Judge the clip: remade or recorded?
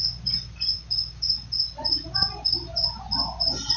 recorded